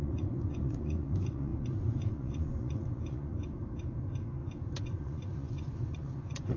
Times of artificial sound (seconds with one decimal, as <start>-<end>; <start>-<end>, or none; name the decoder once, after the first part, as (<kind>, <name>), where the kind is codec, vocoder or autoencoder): 0.0-3.3 (vocoder, Vocos); 4.8-6.6